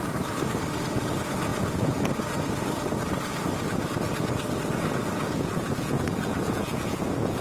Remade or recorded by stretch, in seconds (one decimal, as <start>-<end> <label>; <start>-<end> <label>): 0.0-1.5 recorded; 1.5-2.1 remade; 2.1-5.0 recorded; 5.0-7.4 remade

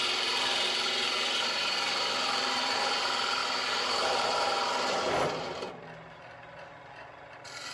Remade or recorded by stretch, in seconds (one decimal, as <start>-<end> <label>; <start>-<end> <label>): 0.0-7.7 remade